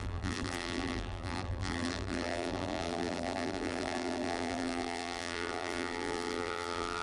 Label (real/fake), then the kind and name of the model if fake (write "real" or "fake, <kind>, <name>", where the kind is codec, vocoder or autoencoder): fake, vocoder, BigVGAN v2